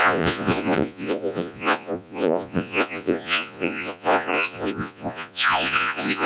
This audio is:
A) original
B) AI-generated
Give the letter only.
B